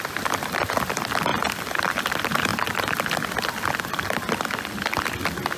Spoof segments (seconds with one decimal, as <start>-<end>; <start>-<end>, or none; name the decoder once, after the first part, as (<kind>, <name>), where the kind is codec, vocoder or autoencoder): none